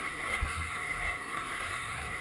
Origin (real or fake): fake